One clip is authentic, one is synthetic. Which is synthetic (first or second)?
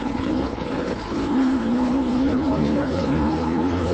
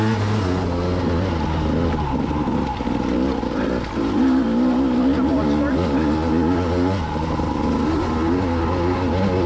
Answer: first